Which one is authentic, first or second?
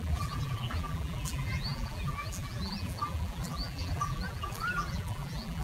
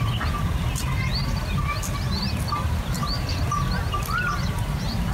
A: second